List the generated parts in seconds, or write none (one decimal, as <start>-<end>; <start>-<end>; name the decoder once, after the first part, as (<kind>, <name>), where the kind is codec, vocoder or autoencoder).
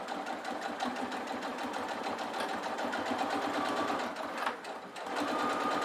none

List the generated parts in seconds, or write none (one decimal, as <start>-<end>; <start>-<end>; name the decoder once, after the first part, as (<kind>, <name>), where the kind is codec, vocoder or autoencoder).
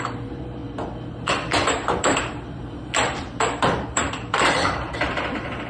0.0-0.6 (vocoder, BigVGAN v2); 2.0-5.7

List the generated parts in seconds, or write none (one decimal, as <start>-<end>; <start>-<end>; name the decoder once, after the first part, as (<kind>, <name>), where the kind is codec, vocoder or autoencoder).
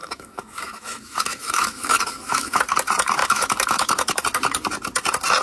0.0-2.6 (autoencoder, DAC-VAE); 3.2-4.2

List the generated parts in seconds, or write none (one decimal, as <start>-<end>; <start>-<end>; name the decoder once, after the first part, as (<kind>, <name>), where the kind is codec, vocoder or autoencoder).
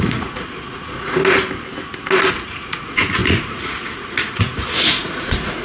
0.0-1.2 (vocoder, Vocos); 2.3-5.6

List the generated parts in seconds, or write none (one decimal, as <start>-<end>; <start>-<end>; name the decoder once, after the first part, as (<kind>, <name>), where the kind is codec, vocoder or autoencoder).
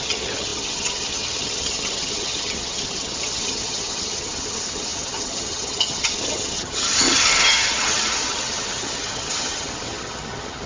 0.0-10.7 (vocoder, HiFi-GAN)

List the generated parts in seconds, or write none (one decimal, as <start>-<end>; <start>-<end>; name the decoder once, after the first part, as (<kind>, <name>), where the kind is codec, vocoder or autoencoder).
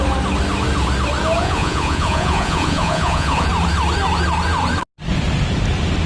1.4-3.5 (vocoder, Vocos)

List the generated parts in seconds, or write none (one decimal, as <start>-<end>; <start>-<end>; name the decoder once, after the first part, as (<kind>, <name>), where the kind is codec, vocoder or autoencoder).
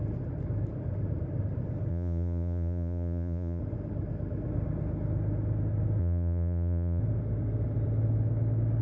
1.9-3.6 (vocoder, Vocos); 6.0-7.0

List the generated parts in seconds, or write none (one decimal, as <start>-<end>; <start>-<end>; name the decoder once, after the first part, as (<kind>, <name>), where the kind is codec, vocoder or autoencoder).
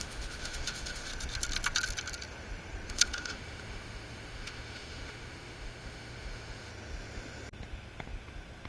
0.0-1.1 (autoencoder, DAC-VAE); 2.9-6.7